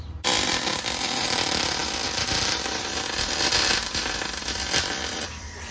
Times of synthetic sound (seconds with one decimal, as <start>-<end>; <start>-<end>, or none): 0.0-5.7